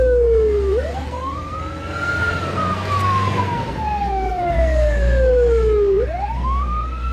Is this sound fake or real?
fake